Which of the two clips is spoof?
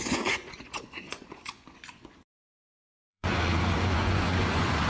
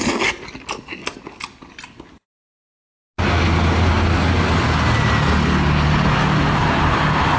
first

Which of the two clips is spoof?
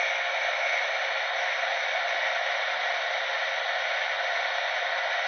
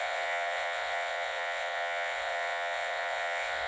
second